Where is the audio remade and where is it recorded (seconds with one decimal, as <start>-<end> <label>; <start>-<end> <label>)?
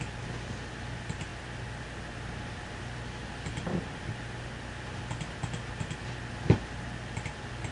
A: 0.0-7.7 recorded